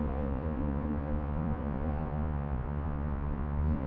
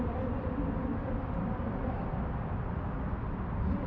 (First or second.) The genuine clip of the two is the second